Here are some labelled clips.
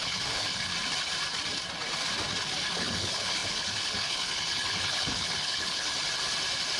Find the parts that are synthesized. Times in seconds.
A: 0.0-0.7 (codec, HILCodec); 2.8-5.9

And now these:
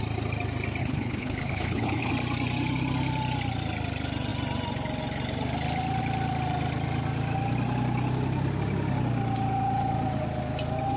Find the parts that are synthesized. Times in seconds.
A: 0.8-2.1 (codec, HILCodec)